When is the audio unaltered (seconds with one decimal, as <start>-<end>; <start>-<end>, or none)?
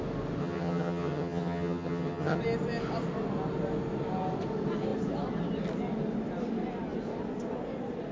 0.0-0.4; 2.4-8.1